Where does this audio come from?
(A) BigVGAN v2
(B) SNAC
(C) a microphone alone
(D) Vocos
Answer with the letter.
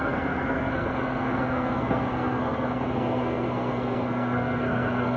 B